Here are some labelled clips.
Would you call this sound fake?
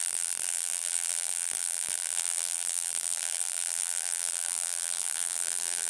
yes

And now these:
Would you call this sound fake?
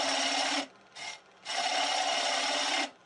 no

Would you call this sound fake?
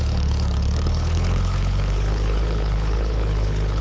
yes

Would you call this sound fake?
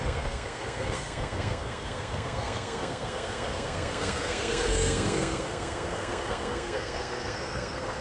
yes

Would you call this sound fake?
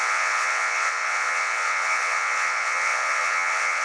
yes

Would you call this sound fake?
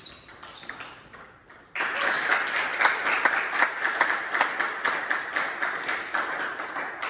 no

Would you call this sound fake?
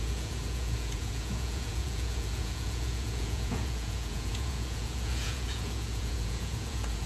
yes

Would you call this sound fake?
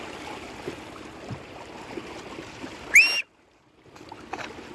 no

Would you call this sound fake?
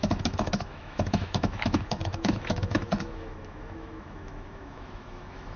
yes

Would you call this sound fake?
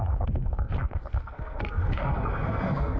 yes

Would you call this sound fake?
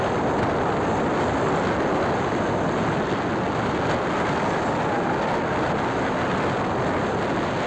no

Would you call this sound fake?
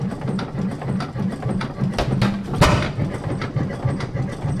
no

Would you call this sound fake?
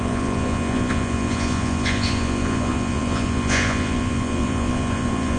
yes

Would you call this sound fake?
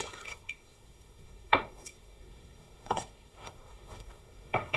yes